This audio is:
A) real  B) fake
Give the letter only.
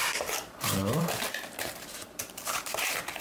B